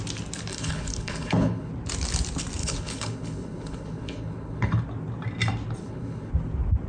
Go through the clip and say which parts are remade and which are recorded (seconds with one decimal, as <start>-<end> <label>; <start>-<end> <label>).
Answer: 0.0-0.5 recorded; 0.5-1.7 remade; 1.7-2.6 recorded; 2.6-4.7 remade; 4.7-5.8 recorded; 5.8-6.3 remade; 6.3-6.9 recorded